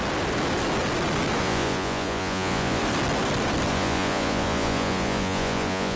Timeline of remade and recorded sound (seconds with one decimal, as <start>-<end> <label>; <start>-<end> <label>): 0.0-1.4 recorded; 1.4-2.8 remade; 2.8-3.7 recorded; 3.7-6.0 remade